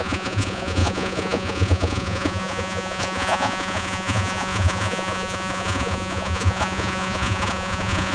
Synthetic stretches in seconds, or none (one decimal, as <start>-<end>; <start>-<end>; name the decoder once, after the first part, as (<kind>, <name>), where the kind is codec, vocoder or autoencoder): 0.0-8.1 (vocoder, Vocos)